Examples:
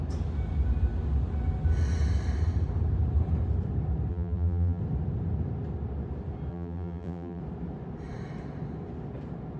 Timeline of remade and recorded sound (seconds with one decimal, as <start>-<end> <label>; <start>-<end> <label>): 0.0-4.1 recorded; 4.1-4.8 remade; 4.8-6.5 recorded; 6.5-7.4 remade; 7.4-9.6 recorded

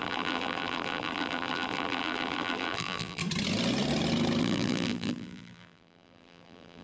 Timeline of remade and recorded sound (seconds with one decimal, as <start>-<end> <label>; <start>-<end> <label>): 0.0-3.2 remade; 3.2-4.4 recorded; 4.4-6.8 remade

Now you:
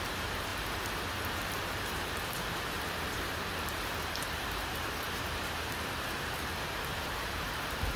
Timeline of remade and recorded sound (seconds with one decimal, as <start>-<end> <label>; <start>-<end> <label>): 0.0-8.0 remade

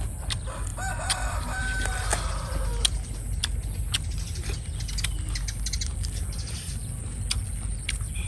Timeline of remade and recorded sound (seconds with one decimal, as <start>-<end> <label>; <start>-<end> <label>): 0.0-0.7 recorded; 0.7-1.9 remade; 1.9-8.3 recorded